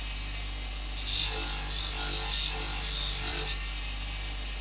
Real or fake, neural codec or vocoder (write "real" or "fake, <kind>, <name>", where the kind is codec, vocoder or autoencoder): real